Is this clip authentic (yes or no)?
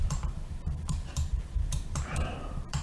no